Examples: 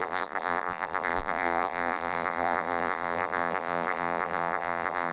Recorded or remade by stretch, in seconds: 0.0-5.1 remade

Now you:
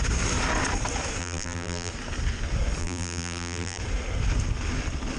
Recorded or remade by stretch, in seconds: 0.0-1.2 recorded; 1.2-1.9 remade; 1.9-2.8 recorded; 2.8-3.8 remade; 3.8-5.2 recorded